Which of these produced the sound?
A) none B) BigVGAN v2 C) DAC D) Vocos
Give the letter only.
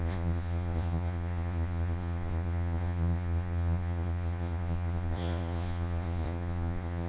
D